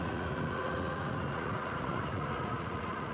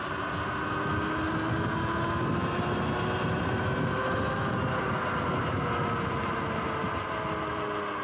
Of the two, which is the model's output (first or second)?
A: first